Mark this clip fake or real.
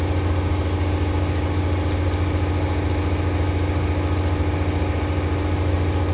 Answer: real